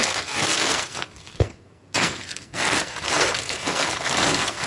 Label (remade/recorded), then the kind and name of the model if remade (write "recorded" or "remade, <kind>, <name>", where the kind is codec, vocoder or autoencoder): remade, codec, SNAC